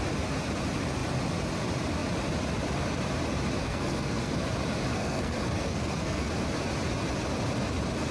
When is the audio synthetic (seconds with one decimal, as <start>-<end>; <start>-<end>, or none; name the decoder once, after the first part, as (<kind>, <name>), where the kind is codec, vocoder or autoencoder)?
3.6-4.3 (codec, SNAC); 4.9-6.3